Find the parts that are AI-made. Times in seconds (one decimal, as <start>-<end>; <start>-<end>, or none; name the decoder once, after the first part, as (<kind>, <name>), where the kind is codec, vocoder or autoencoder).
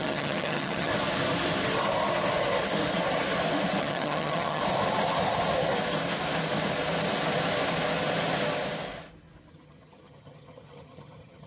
0.0-0.9 (vocoder, HiFi-GAN); 3.8-4.6; 9.5-11.5